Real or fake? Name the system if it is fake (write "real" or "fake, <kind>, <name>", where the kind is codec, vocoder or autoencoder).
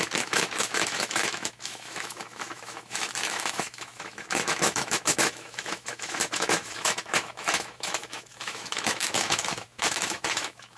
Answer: fake, autoencoder, DAC-VAE